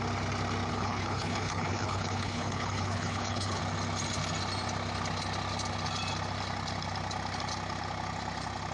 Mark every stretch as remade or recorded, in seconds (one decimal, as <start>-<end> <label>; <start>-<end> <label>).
0.0-0.7 recorded; 0.7-3.6 remade; 3.6-8.7 recorded